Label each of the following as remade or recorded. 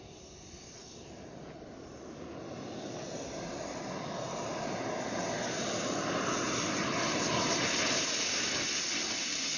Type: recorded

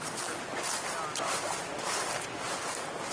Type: recorded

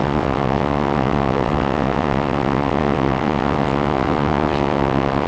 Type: remade